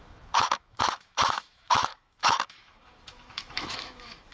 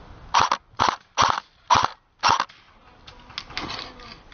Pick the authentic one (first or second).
second